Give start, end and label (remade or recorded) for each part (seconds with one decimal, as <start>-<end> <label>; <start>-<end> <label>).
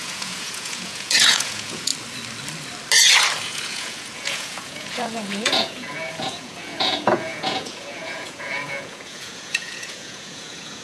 0.0-1.9 remade; 1.9-3.4 recorded; 3.4-10.8 remade